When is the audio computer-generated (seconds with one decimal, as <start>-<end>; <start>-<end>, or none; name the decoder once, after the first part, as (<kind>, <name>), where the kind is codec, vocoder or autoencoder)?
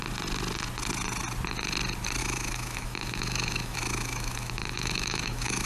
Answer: 2.2-5.7 (autoencoder, DAC-VAE)